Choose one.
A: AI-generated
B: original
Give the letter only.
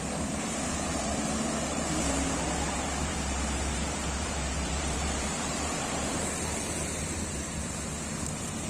A